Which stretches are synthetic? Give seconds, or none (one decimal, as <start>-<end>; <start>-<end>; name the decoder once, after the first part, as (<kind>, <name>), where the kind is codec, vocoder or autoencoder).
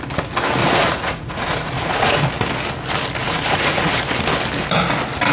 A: 0.6-2.2 (vocoder, Vocos); 3.2-4.0